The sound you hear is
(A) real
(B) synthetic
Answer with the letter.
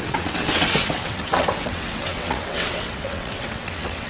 B